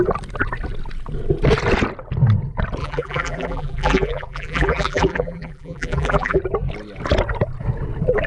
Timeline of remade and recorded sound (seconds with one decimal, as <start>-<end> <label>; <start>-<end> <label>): 0.0-2.8 recorded; 2.8-6.4 remade; 6.4-8.3 recorded